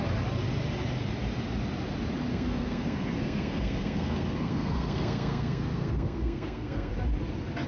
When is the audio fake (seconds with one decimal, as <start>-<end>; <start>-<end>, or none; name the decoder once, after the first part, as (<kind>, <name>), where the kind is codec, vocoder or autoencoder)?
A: 2.3-6.9 (codec, SNAC)